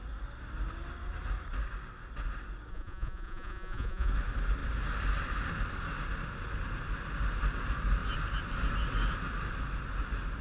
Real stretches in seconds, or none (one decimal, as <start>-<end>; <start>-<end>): 0.0-2.7; 4.1-10.4